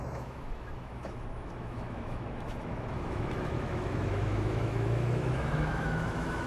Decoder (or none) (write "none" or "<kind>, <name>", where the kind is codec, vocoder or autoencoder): autoencoder, DAC-VAE